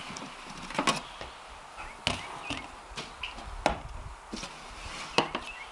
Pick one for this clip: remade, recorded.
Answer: recorded